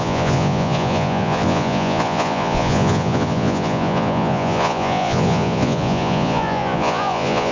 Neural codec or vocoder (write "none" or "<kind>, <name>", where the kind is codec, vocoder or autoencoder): vocoder, Vocos